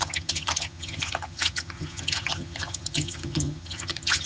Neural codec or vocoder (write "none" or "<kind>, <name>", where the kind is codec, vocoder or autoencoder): vocoder, HiFi-GAN